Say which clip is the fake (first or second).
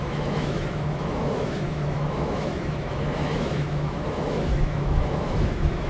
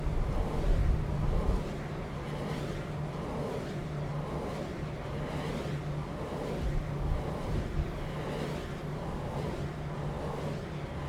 first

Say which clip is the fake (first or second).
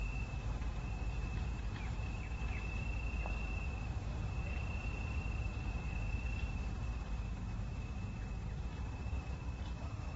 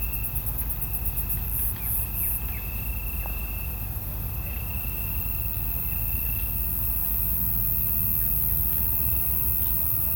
first